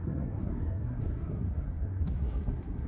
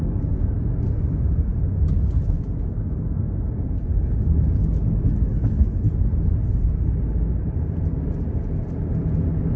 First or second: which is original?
second